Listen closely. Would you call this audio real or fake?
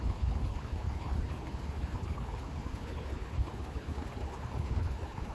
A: fake